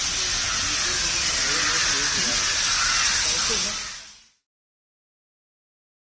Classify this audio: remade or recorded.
recorded